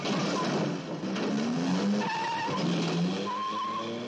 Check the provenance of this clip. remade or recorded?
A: recorded